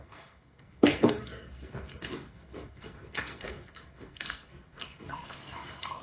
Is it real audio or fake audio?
fake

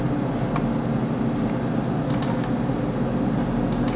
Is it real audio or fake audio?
real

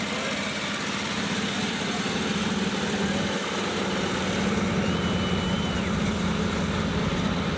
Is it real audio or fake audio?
real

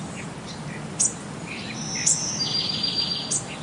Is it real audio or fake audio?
real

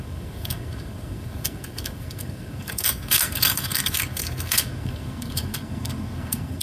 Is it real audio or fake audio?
fake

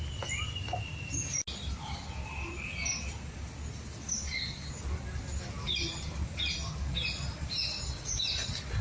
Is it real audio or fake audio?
real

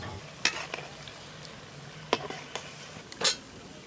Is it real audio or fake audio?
real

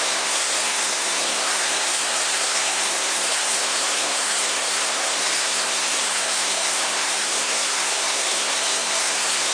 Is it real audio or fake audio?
fake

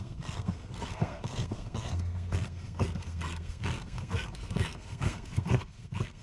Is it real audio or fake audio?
fake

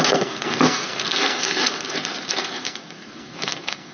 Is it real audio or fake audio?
fake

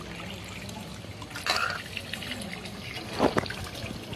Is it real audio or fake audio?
real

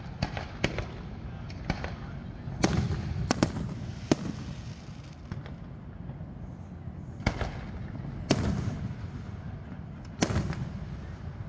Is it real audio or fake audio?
real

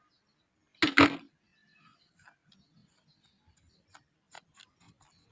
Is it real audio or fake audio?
real